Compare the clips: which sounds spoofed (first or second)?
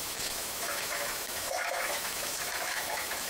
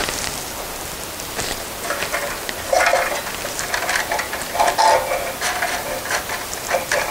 first